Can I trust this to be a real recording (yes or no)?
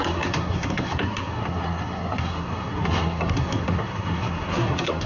no